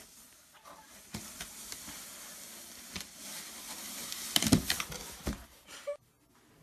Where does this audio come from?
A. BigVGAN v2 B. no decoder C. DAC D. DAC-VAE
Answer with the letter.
B